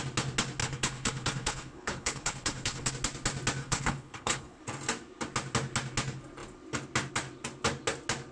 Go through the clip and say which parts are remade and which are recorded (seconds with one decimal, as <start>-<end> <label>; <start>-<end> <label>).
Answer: 0.0-0.6 recorded; 0.6-2.9 remade; 2.9-3.6 recorded; 3.6-4.6 remade; 4.6-8.3 recorded